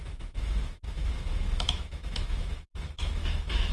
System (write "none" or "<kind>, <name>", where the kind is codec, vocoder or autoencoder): autoencoder, DAC-VAE